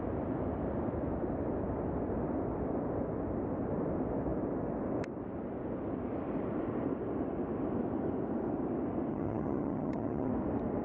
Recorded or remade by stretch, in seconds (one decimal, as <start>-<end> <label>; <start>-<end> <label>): 0.0-9.1 recorded; 9.1-10.3 remade; 10.3-10.8 recorded

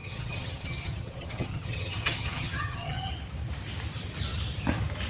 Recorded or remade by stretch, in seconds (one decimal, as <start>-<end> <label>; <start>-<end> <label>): 0.0-3.1 remade; 3.1-5.1 recorded

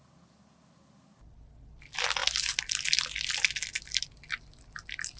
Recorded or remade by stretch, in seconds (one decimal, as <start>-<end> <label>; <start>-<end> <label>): 0.0-5.2 recorded

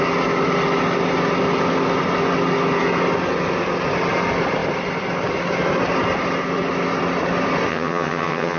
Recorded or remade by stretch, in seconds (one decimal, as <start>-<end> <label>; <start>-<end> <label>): 0.0-7.7 recorded; 7.7-8.6 remade

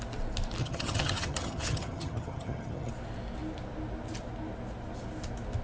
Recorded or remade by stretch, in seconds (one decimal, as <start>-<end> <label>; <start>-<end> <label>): 0.0-0.6 recorded; 0.6-2.9 remade; 2.9-5.6 recorded

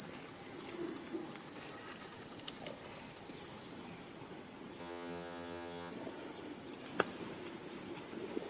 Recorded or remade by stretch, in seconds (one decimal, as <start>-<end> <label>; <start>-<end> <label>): 0.0-4.8 recorded; 4.8-5.9 remade; 5.9-8.5 recorded

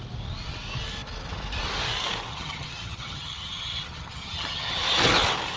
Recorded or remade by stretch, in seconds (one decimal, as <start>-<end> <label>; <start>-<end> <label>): 0.0-2.3 recorded; 2.3-4.7 remade; 4.7-5.6 recorded

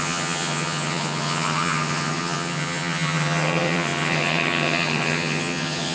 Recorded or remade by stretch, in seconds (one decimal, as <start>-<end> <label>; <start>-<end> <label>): 0.0-5.9 remade